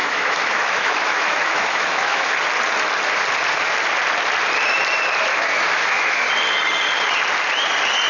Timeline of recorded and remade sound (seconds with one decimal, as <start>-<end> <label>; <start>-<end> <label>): 0.0-2.3 remade; 2.3-5.3 recorded; 5.3-6.3 remade; 6.3-8.1 recorded